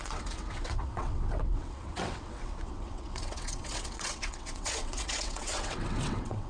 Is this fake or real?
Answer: fake